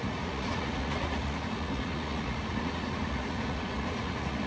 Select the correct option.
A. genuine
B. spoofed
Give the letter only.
B